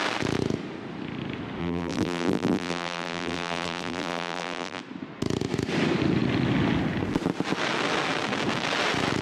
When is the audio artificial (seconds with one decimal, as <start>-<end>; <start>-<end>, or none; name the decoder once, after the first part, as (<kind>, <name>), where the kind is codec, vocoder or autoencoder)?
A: 1.6-4.8 (vocoder, BigVGAN v2)

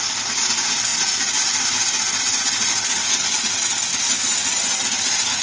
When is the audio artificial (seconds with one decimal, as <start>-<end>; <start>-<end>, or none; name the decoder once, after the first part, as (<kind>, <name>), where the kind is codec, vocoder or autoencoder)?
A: none

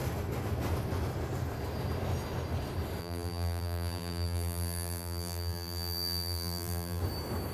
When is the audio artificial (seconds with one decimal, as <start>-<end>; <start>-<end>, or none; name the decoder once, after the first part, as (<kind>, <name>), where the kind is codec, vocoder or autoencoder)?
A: 3.0-7.0 (vocoder, BigVGAN v2)

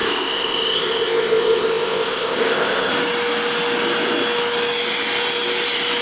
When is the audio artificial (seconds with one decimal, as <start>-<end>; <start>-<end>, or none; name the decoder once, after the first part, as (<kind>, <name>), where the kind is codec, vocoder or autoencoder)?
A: 0.0-2.9 (codec, ZipCodec)

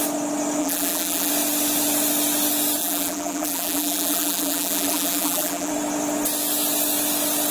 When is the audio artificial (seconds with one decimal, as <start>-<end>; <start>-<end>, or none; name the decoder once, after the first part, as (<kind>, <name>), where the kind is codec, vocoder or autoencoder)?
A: 0.6-1.3 (vocoder, BigVGAN v2); 2.8-5.7

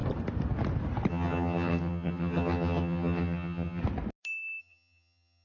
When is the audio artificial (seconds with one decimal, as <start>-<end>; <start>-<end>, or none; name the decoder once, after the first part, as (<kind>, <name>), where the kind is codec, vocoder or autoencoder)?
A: 1.1-3.8 (vocoder, HiFi-GAN); 4.6-5.4

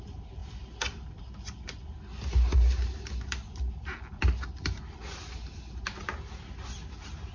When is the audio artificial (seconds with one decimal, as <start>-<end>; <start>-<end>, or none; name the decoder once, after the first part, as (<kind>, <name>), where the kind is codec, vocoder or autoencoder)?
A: none